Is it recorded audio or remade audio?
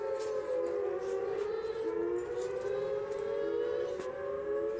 recorded